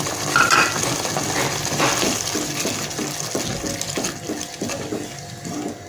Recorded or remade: recorded